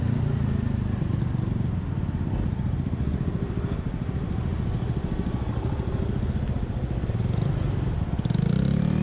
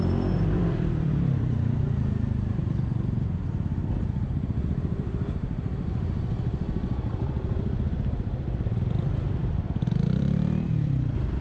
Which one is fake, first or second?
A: second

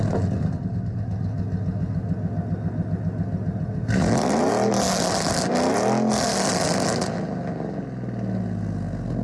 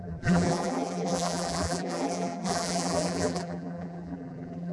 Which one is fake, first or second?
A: second